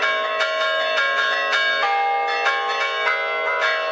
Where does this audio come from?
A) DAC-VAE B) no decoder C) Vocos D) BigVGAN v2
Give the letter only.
B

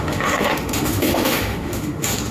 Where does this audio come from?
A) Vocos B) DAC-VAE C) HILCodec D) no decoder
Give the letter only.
B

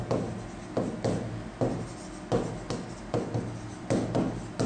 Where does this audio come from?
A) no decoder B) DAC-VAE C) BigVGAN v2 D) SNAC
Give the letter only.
A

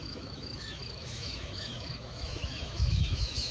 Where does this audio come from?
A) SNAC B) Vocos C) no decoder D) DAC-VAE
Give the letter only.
D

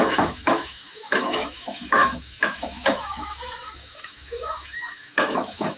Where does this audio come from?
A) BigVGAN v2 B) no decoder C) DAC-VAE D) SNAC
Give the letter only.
C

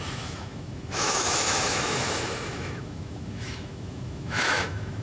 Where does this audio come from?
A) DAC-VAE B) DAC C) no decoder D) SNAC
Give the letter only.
A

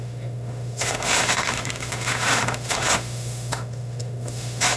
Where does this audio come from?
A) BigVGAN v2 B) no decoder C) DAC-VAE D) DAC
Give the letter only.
C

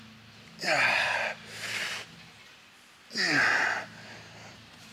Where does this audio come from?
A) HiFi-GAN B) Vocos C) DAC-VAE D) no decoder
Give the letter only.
D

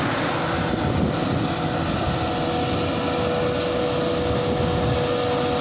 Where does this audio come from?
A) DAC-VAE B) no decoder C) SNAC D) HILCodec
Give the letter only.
B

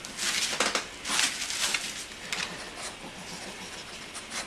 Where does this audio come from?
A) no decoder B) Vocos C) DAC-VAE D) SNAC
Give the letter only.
A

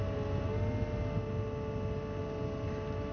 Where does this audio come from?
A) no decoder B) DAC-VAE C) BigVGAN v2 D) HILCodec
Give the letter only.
A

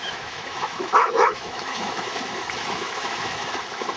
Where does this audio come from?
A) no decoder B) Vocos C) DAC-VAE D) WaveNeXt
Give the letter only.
C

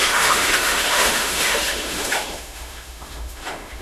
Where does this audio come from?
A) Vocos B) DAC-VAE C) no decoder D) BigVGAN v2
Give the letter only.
B